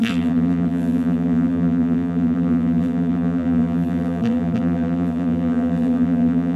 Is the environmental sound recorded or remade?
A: remade